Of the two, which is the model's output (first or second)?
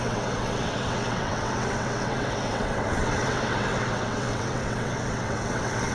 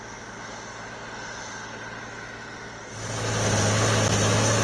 first